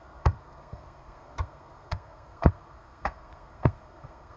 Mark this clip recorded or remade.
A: remade